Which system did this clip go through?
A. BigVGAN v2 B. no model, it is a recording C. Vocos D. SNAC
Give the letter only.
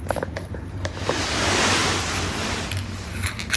B